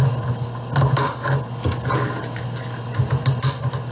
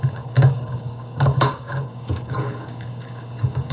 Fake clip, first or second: second